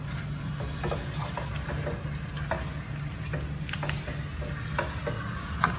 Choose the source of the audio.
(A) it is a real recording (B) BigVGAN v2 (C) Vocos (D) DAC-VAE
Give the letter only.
A